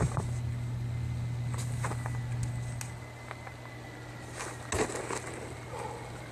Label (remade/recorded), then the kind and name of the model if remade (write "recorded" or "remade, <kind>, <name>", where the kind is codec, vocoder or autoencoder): recorded